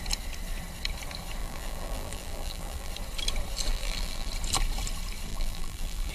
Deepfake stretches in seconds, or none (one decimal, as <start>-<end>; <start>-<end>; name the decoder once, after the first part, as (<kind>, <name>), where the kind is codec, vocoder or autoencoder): 1.4-2.9 (vocoder, BigVGAN v2); 3.7-4.3; 5.3-6.1

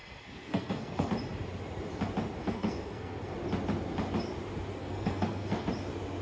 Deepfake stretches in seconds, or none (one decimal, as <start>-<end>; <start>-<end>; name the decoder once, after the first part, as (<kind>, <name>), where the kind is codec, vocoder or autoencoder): 0.0-1.1 (codec, SNAC); 2.4-3.3; 4.8-5.7